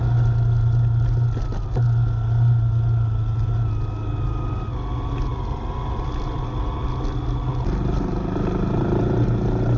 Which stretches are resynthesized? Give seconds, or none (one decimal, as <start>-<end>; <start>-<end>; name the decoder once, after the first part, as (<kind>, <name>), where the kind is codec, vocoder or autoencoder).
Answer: none